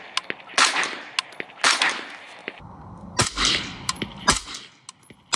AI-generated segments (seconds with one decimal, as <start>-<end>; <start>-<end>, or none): none